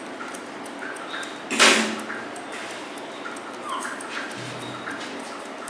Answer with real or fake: real